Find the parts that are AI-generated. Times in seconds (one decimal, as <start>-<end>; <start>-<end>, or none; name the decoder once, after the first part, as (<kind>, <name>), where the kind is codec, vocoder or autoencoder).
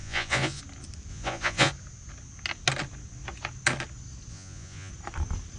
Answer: 0.0-0.6 (vocoder, Vocos); 1.1-1.7; 4.3-4.9